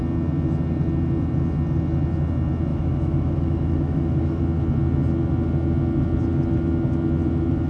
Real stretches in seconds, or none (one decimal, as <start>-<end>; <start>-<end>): 0.0-2.7; 4.4-7.7